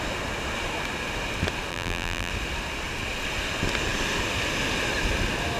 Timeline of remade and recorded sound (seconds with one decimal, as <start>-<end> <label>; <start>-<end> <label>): 0.0-1.7 recorded; 1.7-2.3 remade; 2.3-5.6 recorded